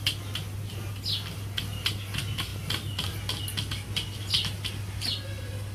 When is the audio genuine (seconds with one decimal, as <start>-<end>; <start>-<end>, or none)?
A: 0.0-5.7